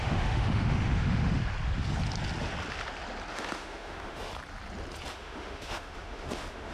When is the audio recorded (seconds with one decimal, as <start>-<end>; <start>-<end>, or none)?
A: 1.4-3.3; 4.3-5.1